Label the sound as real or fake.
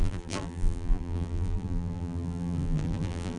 fake